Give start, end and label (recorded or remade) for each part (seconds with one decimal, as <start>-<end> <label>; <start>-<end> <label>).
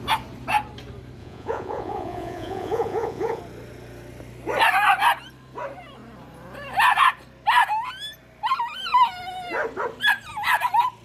0.0-1.2 recorded; 1.2-3.4 remade; 3.4-11.0 recorded